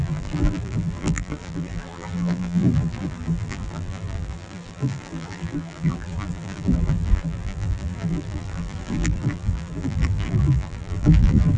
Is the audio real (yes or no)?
no